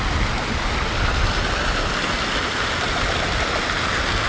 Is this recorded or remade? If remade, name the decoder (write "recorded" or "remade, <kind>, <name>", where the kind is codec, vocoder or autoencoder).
recorded